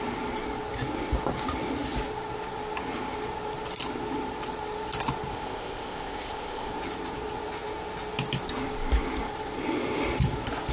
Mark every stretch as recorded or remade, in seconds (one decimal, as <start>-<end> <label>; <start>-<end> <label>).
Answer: 0.0-5.3 recorded; 5.3-6.7 remade; 6.7-10.7 recorded